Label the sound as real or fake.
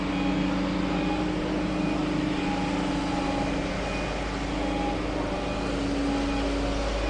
real